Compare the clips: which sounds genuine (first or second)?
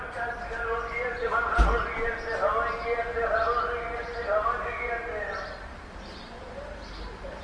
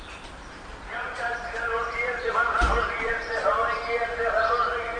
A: first